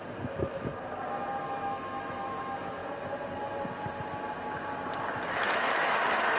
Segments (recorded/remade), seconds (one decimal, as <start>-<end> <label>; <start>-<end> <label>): 0.0-0.7 remade; 0.7-1.4 recorded; 1.4-2.8 remade; 2.8-5.4 recorded; 5.4-6.4 remade